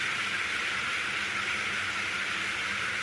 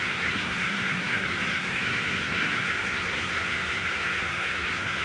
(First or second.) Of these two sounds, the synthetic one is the second